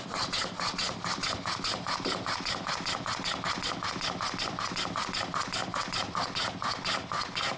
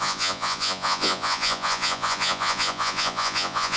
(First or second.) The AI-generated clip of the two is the second